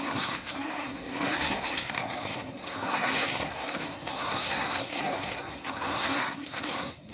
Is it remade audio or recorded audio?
remade